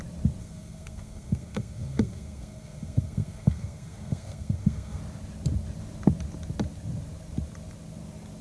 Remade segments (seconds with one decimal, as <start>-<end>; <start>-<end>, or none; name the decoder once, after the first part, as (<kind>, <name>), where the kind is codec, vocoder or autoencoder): 0.4-5.0 (codec, SNAC)